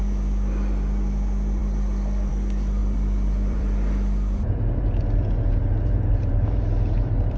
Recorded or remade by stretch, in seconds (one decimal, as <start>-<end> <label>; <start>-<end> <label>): 0.0-2.8 recorded; 2.8-7.4 remade